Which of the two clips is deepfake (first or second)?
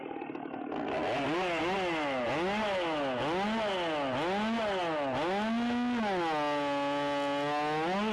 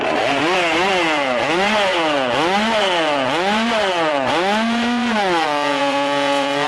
second